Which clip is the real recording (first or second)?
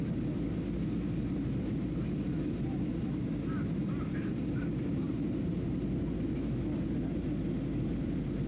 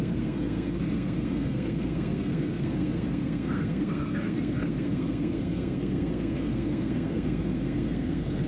first